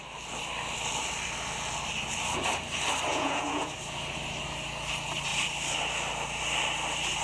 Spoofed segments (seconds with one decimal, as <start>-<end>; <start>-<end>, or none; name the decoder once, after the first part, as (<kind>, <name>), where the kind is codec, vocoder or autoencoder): 3.1-3.7 (vocoder, Vocos)